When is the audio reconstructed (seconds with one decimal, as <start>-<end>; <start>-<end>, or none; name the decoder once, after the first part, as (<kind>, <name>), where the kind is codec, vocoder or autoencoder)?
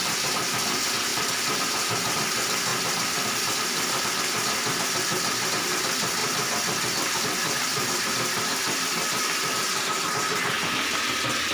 1.1-1.6 (vocoder, BigVGAN v2); 2.7-4.0; 6.2-10.1